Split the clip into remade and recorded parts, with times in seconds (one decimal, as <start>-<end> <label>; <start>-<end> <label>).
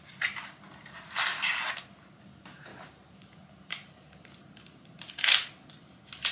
0.0-2.7 recorded; 2.7-5.1 remade; 5.1-6.3 recorded